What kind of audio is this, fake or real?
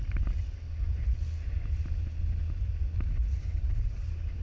real